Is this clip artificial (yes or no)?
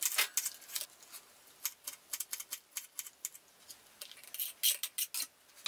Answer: no